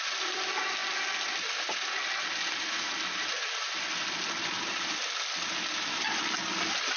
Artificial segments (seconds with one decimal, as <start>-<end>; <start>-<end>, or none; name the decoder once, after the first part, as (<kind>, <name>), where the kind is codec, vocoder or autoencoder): none